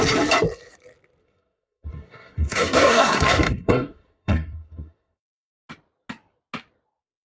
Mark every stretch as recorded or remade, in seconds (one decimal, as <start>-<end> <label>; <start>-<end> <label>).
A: 0.0-1.2 recorded; 1.2-5.5 remade; 5.5-7.2 recorded